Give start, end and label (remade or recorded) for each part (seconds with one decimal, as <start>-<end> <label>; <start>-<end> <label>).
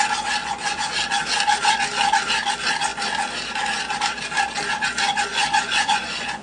0.0-0.4 recorded; 0.4-0.9 remade; 0.9-5.3 recorded; 5.3-6.4 remade